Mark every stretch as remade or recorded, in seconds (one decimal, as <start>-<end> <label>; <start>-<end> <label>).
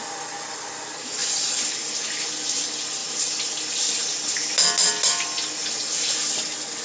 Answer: 0.0-6.8 recorded